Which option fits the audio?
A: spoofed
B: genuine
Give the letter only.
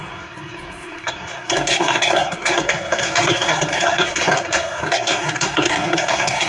A